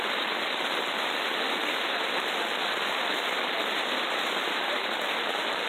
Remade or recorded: recorded